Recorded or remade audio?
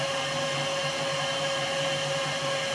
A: recorded